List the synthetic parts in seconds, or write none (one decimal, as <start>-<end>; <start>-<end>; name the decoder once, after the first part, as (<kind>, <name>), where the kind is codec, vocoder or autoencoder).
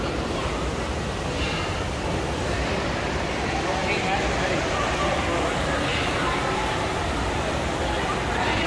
5.9-7.0 (vocoder, BigVGAN v2)